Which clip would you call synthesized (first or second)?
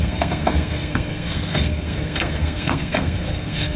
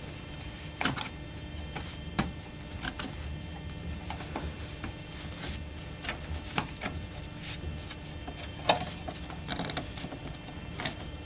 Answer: first